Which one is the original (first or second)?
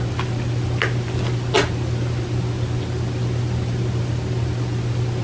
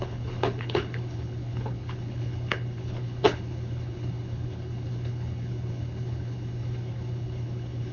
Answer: first